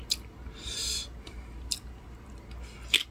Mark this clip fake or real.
real